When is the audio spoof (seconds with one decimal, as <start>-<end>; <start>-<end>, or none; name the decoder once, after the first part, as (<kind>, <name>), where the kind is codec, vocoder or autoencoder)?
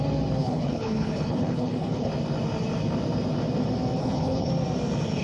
0.4-2.1 (codec, HILCodec); 4.0-4.5